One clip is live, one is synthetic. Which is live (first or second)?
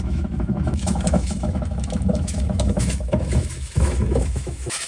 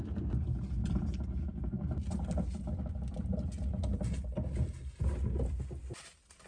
second